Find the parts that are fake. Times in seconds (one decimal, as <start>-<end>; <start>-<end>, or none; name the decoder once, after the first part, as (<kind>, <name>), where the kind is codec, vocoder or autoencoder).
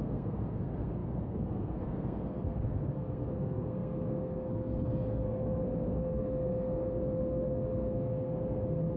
0.0-9.0 (codec, SNAC)